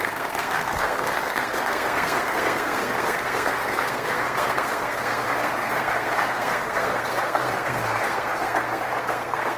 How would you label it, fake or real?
fake